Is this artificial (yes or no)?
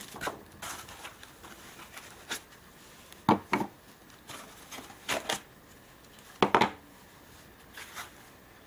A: no